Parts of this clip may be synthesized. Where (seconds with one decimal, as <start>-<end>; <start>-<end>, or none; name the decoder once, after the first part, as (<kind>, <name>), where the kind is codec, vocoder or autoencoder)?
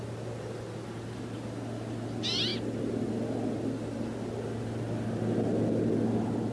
none